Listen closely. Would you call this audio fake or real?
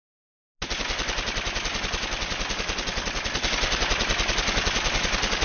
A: real